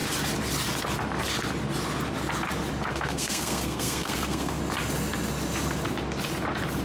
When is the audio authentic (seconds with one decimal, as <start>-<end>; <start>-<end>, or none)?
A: 0.0-2.9; 4.6-6.8